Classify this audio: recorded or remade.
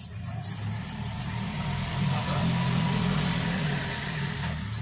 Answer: recorded